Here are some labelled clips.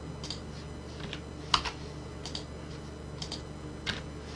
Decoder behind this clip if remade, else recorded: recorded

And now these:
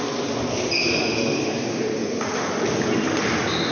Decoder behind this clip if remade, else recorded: recorded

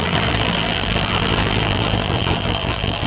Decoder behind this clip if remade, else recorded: remade, vocoder, BigVGAN v2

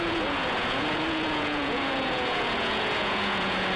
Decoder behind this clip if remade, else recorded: remade, vocoder, Vocos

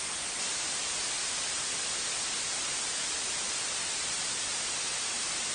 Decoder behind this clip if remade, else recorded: recorded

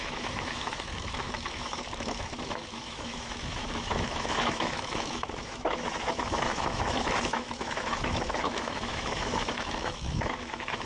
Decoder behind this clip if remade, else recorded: remade, autoencoder, DAC-VAE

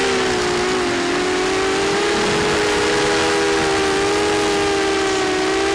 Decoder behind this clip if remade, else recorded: recorded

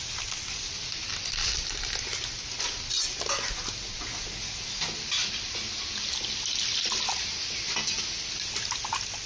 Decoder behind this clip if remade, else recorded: recorded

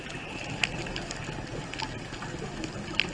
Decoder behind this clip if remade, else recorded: recorded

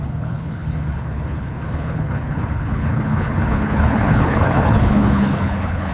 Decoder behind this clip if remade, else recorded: remade, codec, HILCodec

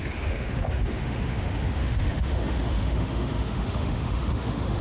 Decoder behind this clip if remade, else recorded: remade, autoencoder, DAC-VAE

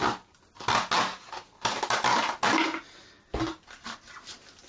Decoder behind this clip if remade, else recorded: recorded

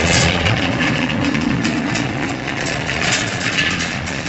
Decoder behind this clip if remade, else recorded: remade, vocoder, Vocos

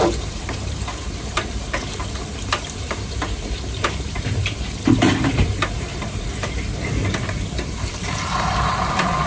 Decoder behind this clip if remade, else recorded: remade, vocoder, BigVGAN v2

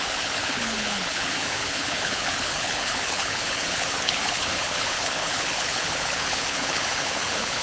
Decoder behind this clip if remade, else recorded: remade, codec, HILCodec